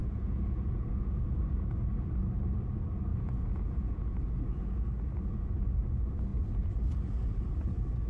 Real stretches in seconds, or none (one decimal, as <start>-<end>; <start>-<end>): 1.4-3.1; 4.7-8.1